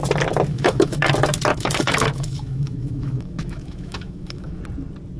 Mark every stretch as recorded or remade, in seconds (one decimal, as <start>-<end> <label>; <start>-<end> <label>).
0.0-0.5 recorded; 0.5-1.1 remade; 1.1-1.5 recorded; 1.5-4.6 remade; 4.6-5.2 recorded